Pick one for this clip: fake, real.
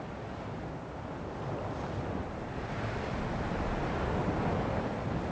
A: real